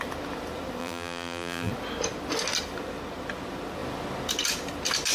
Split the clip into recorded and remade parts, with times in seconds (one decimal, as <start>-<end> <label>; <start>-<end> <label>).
0.0-0.8 recorded; 0.8-1.7 remade; 1.7-5.1 recorded